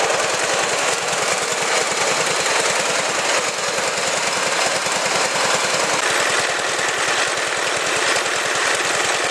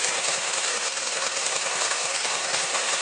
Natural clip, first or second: first